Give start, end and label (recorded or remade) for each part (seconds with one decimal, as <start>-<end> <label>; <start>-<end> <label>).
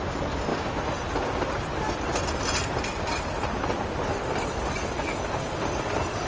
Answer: 0.0-6.3 recorded